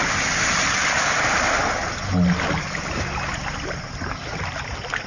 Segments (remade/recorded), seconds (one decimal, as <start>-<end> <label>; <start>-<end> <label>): 0.0-5.1 recorded